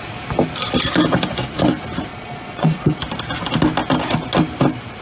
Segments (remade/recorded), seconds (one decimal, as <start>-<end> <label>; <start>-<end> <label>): 0.0-2.1 recorded; 2.1-3.0 remade; 3.0-5.0 recorded